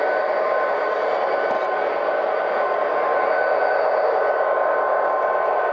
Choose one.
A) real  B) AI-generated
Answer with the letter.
A